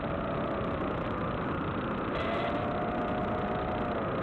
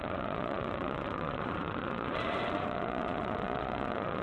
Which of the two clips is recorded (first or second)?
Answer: first